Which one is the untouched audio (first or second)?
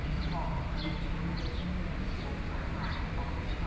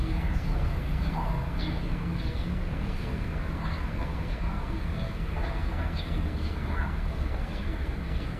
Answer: first